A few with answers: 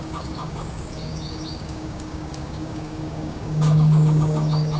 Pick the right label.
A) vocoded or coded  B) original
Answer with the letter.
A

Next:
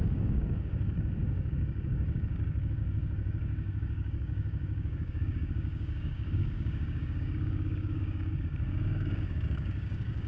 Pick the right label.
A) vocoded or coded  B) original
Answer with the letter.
A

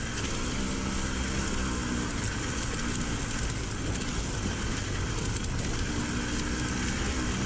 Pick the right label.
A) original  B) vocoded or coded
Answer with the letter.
A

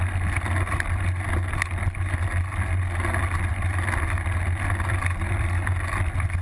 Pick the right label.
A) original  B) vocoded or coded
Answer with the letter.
A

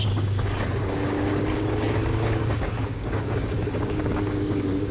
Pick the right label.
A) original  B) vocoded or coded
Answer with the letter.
B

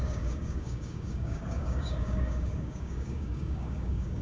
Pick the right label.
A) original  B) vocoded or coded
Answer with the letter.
B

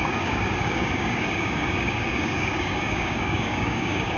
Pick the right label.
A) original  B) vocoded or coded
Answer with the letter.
B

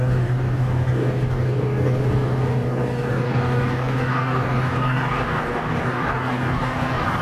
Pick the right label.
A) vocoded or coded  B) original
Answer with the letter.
A